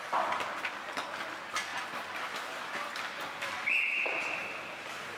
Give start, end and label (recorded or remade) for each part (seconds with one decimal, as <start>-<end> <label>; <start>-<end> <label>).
0.0-5.2 recorded